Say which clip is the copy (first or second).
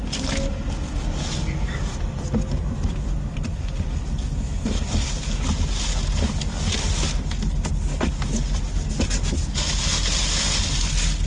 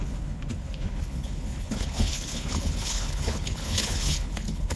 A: second